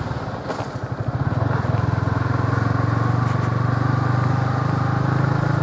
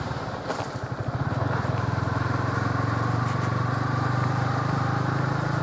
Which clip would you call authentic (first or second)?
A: first